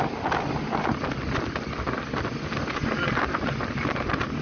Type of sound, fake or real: real